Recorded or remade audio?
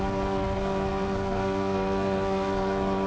remade